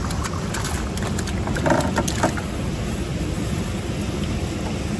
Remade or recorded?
recorded